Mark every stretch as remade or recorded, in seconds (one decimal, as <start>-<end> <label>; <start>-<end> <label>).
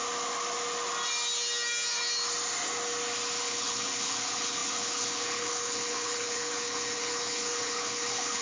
0.0-3.4 recorded; 3.4-8.4 remade